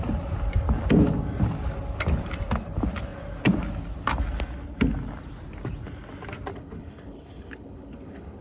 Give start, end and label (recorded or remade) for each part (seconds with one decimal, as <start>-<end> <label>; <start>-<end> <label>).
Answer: 0.0-6.5 recorded; 6.5-8.4 remade